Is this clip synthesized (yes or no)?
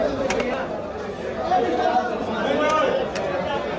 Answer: no